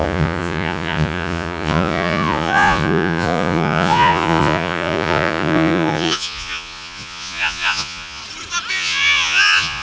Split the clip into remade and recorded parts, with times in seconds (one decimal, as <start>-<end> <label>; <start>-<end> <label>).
0.0-8.2 remade; 8.2-8.7 recorded; 8.7-9.8 remade